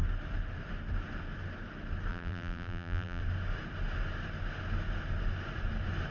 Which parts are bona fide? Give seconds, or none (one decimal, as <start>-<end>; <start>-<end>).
0.0-2.1; 3.2-6.1